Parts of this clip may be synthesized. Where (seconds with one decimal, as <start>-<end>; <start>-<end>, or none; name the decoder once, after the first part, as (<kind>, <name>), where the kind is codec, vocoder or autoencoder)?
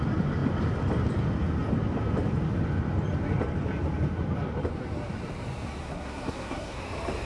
5.8-6.8 (codec, SNAC)